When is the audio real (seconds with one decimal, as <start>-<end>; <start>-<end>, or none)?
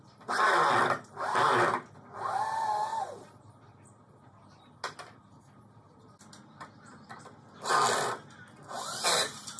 0.0-9.6